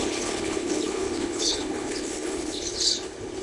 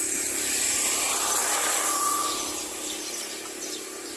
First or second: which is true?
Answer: second